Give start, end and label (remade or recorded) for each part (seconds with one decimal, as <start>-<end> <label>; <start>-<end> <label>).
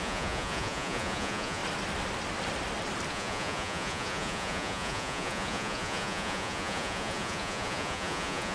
0.0-1.6 remade; 1.6-3.1 recorded; 3.1-8.5 remade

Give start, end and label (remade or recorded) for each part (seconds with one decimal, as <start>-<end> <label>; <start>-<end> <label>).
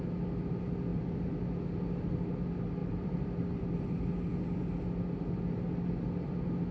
0.0-0.9 recorded; 0.9-1.6 remade; 1.6-2.8 recorded; 2.8-4.7 remade; 4.7-6.7 recorded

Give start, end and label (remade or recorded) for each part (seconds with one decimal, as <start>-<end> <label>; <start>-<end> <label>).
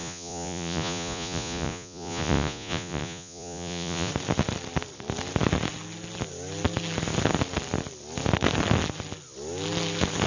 0.0-4.1 remade; 4.1-10.3 recorded